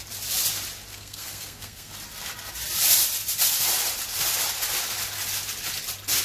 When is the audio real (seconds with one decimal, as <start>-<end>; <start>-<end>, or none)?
0.0-0.9; 1.9-6.2